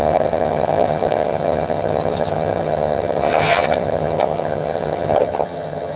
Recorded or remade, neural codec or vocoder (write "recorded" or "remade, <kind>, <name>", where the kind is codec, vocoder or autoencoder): remade, vocoder, HiFi-GAN